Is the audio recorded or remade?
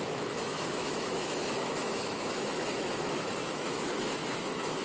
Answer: remade